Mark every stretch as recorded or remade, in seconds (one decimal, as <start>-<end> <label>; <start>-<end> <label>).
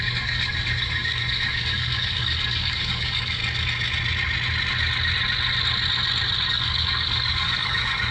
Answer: 0.0-3.4 remade; 3.4-6.5 recorded; 6.5-8.1 remade